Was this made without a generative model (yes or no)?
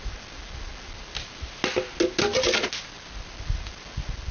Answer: yes